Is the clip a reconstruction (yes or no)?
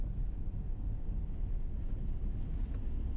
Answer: no